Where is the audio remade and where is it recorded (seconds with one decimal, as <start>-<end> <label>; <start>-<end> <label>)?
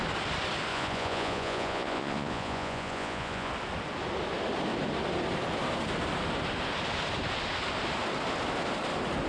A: 0.0-0.7 recorded; 0.7-3.5 remade; 3.5-9.3 recorded